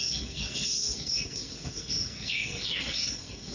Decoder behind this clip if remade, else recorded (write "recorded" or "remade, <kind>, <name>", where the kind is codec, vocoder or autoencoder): remade, codec, SNAC